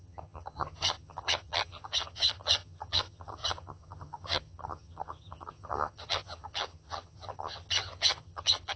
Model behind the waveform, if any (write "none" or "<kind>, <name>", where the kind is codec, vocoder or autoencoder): vocoder, HiFi-GAN